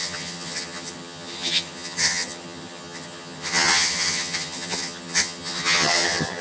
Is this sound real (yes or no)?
no